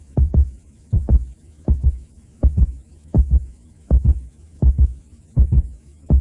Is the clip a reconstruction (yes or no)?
yes